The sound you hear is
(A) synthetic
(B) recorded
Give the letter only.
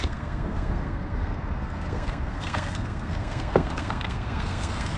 A